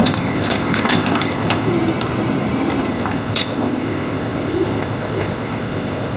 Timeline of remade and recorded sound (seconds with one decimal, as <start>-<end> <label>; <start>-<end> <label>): 0.0-1.7 remade; 1.7-2.9 recorded; 2.9-6.2 remade